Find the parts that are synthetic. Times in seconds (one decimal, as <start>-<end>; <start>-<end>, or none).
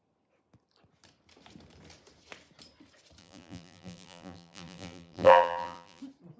3.2-6.0